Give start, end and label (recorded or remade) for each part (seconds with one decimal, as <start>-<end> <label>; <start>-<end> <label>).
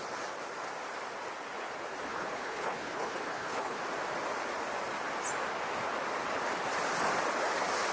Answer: 0.0-2.1 recorded; 2.1-3.8 remade; 3.8-7.9 recorded